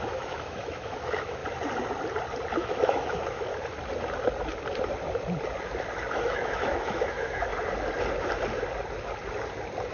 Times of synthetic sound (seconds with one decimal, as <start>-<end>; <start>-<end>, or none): 0.0-1.4; 2.5-3.5; 6.1-7.5